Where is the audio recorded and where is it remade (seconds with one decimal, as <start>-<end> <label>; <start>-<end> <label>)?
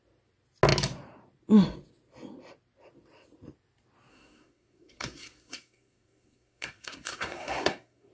0.0-4.1 recorded; 4.1-8.1 remade